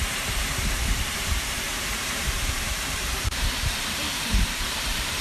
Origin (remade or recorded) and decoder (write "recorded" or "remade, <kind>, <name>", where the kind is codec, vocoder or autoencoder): remade, vocoder, BigVGAN v2